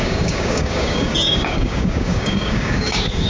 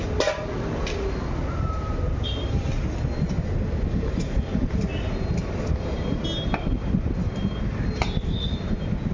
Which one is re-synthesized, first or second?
first